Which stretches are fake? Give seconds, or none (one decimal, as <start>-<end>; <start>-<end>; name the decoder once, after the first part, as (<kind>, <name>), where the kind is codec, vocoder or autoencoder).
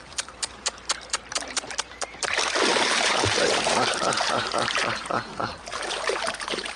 0.0-6.8 (vocoder, BigVGAN v2)